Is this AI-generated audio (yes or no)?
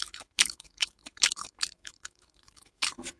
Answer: yes